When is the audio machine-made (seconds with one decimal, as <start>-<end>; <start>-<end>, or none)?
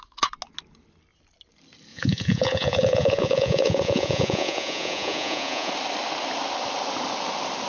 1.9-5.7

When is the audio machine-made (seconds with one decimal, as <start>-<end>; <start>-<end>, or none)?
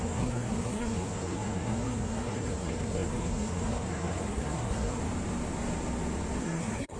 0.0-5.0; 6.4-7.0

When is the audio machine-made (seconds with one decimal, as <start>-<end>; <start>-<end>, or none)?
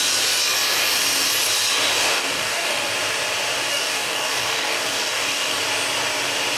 1.9-2.9; 3.7-5.6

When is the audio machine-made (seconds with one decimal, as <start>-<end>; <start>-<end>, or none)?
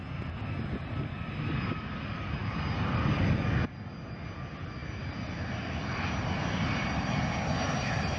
none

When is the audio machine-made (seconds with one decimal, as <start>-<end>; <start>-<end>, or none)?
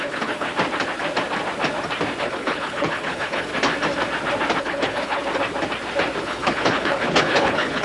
0.0-0.5; 2.2-3.5; 4.6-5.2; 6.2-7.8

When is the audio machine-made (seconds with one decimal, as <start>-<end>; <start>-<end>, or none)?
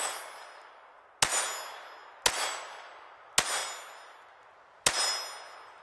none